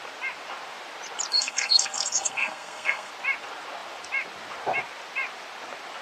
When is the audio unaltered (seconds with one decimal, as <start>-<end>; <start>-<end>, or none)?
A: 0.0-1.3; 3.1-6.0